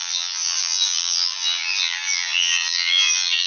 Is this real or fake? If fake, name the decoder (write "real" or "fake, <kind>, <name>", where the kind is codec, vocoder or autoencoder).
fake, vocoder, BigVGAN v2